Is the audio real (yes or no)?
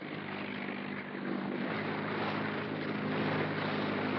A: yes